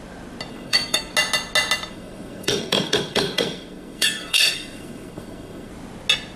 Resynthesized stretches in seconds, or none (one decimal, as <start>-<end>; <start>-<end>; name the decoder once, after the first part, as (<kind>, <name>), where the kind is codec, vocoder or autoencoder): 0.5-1.1 (codec, SNAC); 1.9-5.7